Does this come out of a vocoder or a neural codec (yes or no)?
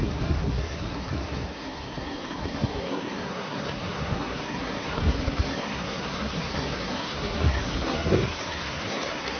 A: yes